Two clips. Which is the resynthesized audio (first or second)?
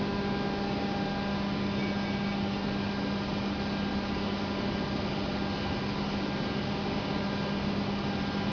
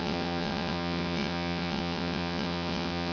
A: second